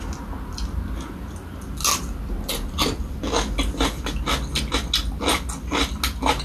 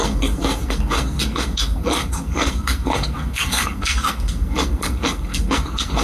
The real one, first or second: first